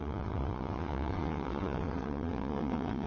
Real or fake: fake